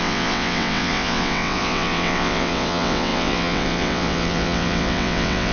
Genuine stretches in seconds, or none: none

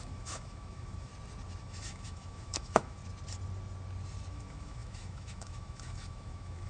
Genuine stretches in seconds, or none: 1.1-1.6; 3.0-4.3

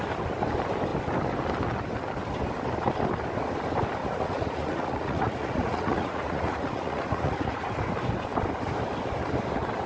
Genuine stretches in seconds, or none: 0.0-4.0; 7.8-9.9

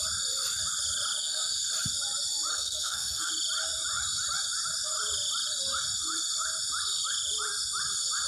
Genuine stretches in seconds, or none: 0.0-1.2; 1.7-2.5; 3.3-8.3

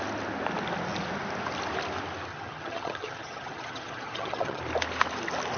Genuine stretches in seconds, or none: 0.0-2.3; 4.6-5.6

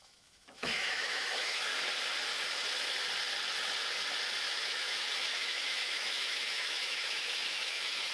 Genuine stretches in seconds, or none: 1.7-4.4

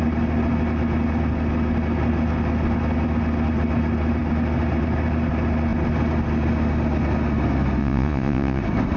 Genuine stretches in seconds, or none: 0.0-7.8; 8.6-9.0

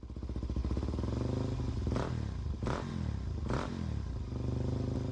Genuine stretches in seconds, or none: 0.0-5.1